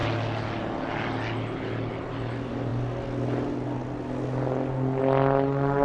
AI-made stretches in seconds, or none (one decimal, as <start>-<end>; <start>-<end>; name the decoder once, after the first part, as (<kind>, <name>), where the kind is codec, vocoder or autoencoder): none